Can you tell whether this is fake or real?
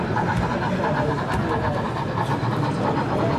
real